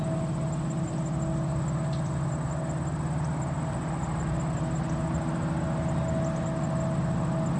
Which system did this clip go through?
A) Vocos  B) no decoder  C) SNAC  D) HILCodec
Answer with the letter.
B